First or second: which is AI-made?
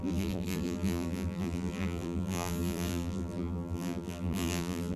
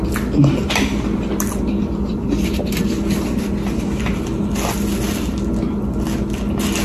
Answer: first